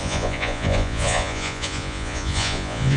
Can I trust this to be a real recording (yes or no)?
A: no